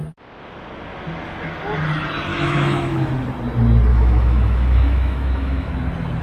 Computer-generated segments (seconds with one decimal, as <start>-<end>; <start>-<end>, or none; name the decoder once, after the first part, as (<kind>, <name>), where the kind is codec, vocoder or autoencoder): 2.3-3.1 (autoencoder, DAC-VAE); 3.9-5.7